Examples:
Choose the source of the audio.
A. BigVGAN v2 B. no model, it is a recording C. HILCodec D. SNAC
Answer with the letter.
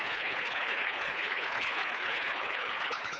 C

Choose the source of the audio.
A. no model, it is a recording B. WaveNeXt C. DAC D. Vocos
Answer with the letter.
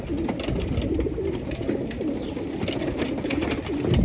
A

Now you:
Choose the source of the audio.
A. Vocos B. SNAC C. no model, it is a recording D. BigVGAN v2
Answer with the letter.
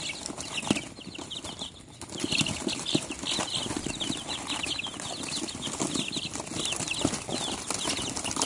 C